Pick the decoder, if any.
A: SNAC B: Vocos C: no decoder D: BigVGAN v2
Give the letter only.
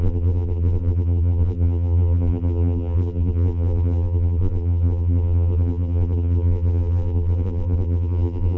D